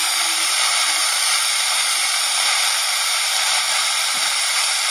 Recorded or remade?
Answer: remade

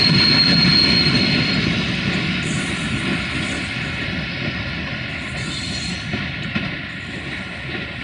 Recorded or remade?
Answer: recorded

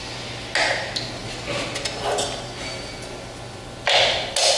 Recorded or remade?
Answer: recorded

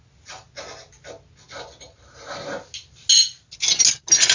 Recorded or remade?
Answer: recorded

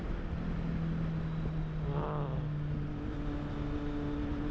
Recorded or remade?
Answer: recorded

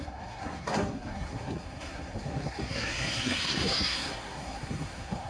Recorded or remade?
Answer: remade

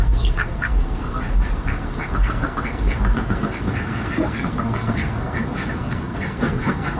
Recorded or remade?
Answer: remade